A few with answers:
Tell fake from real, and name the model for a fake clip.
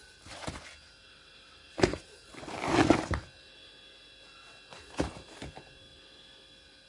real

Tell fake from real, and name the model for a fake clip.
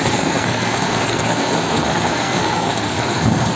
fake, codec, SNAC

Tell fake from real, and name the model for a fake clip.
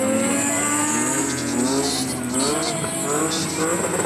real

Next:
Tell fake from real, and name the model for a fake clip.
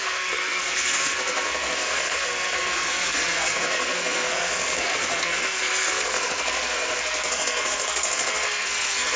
fake, codec, SNAC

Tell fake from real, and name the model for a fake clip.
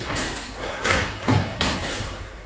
fake, codec, SNAC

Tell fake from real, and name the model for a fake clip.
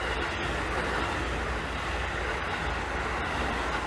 real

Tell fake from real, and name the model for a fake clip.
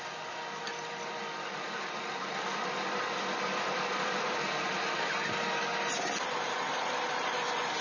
real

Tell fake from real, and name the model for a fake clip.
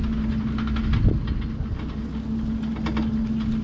real